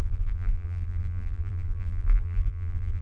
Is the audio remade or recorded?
remade